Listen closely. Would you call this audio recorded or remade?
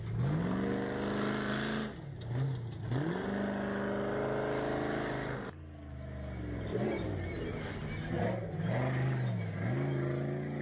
recorded